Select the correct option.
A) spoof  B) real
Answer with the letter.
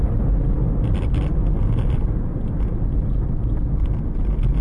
B